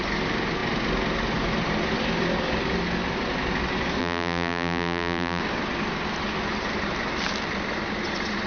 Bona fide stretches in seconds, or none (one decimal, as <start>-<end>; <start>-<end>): 0.0-4.0; 5.4-8.5